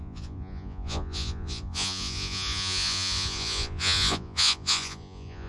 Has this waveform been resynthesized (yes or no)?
yes